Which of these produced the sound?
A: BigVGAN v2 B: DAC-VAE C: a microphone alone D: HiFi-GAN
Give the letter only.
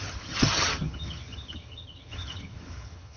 D